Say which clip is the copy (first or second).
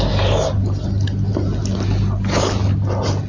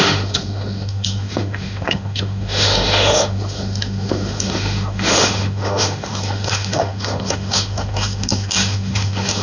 second